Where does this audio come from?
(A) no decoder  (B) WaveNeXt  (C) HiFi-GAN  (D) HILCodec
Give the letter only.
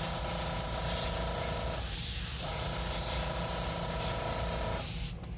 A